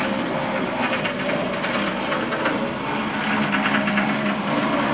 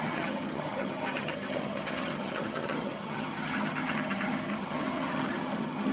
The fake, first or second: second